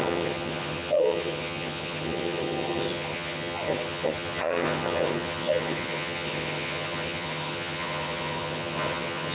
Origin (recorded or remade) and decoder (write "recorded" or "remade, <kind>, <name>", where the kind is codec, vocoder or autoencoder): remade, vocoder, HiFi-GAN